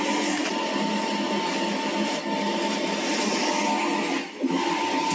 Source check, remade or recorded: recorded